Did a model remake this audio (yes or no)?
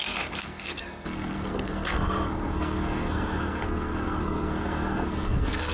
yes